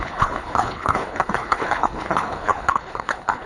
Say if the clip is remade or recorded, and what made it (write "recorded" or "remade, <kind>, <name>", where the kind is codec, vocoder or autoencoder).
remade, codec, HILCodec